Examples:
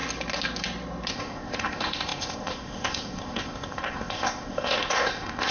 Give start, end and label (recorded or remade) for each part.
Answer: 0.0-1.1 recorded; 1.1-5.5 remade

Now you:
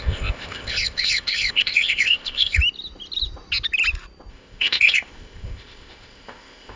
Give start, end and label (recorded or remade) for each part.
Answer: 0.0-2.6 remade; 2.6-4.3 recorded; 4.3-6.8 remade